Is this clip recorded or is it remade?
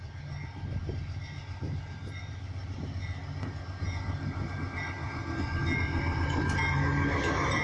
recorded